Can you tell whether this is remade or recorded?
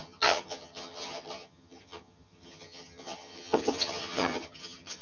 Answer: remade